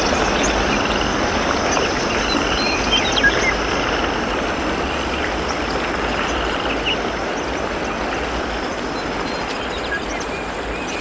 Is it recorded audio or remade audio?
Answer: recorded